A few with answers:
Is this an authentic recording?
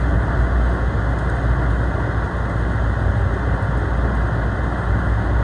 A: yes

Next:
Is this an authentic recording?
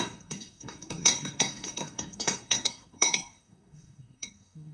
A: no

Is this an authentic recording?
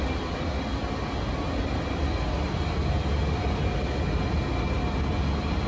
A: yes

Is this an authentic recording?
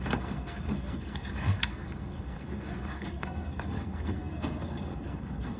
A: no